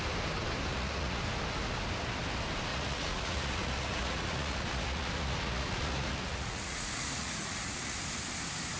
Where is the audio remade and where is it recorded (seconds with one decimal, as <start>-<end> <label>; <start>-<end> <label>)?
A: 0.0-0.7 recorded; 0.7-1.2 remade; 1.2-2.7 recorded; 2.7-8.0 remade; 8.0-8.8 recorded